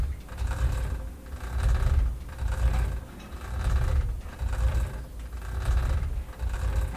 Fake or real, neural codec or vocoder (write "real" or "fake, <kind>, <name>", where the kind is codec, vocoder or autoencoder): real